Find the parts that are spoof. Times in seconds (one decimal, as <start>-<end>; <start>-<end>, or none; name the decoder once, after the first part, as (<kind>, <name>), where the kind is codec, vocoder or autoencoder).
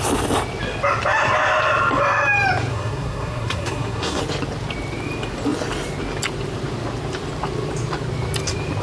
2.7-4.2 (codec, SNAC)